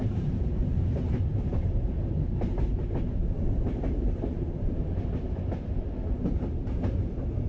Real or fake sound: fake